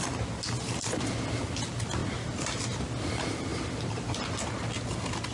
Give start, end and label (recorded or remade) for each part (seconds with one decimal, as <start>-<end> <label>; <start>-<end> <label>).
0.0-5.3 recorded